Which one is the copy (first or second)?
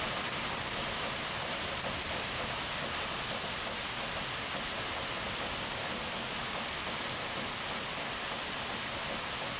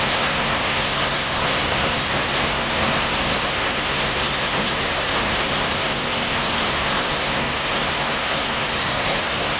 second